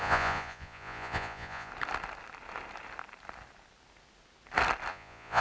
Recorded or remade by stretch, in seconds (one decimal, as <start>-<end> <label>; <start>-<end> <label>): 0.0-1.7 remade; 1.7-4.9 recorded; 4.9-5.4 remade